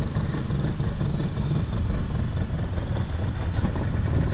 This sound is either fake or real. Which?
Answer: real